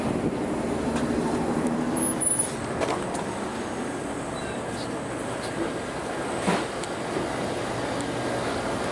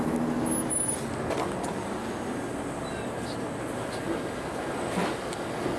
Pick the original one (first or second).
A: second